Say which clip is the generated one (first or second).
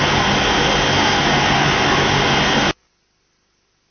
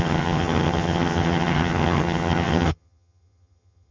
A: second